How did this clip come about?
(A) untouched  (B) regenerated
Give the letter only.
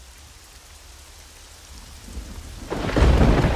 A